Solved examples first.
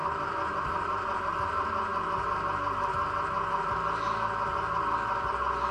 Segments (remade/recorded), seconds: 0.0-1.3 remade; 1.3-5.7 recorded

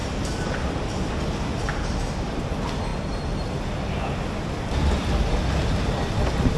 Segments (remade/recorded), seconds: 0.0-1.1 remade; 1.1-1.5 recorded; 1.5-2.5 remade; 2.5-2.9 recorded; 2.9-3.6 remade; 3.6-6.6 recorded